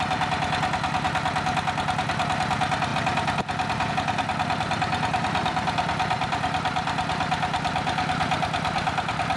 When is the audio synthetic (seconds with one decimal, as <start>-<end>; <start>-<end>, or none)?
none